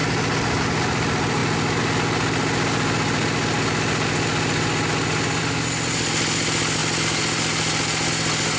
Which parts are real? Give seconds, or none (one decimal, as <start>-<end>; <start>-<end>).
0.0-8.6